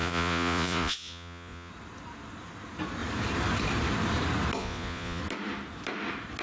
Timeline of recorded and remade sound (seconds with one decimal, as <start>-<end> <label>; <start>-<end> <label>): 0.0-1.7 remade; 1.7-4.6 recorded; 4.6-5.2 remade; 5.2-6.4 recorded